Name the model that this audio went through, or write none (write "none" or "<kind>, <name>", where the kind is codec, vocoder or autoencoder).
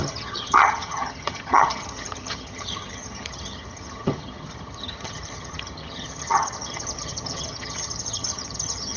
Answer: vocoder, HiFi-GAN